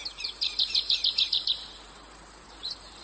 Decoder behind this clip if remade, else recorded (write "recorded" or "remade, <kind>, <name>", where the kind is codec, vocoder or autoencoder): remade, vocoder, BigVGAN v2